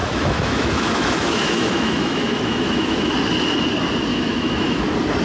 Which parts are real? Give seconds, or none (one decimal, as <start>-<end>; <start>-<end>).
3.1-4.1; 4.8-5.2